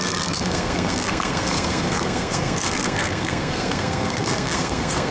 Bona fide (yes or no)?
no